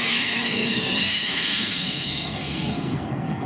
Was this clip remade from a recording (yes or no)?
yes